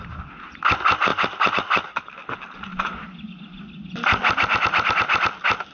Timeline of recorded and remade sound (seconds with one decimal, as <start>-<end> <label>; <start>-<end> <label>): 0.0-5.7 recorded